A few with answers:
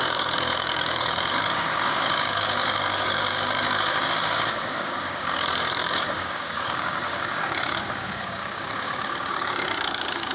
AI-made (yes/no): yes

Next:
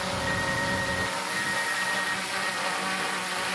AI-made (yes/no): no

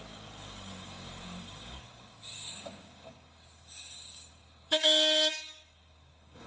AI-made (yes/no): yes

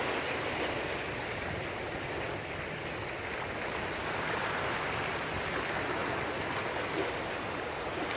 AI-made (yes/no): no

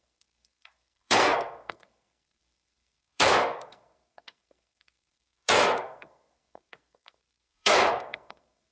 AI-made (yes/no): yes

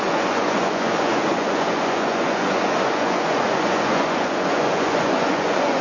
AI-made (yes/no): yes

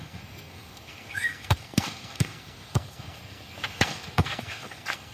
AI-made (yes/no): yes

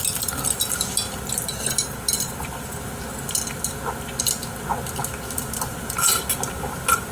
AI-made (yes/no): no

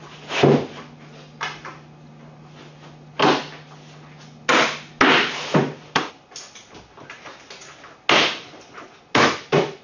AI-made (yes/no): no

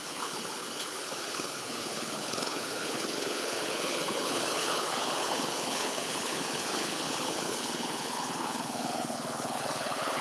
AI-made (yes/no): yes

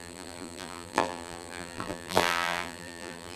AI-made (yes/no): yes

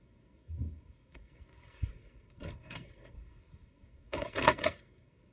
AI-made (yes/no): yes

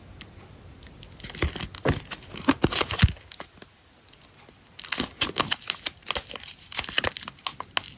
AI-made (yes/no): no